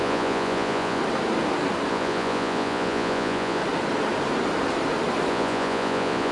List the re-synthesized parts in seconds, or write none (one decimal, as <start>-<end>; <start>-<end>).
0.0-1.0; 1.9-3.6; 5.3-6.3

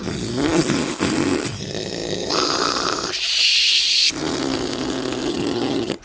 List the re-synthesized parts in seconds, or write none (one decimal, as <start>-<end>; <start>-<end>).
5.3-6.0